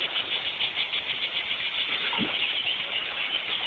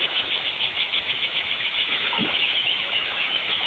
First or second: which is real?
first